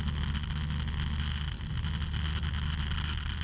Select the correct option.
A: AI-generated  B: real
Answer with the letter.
B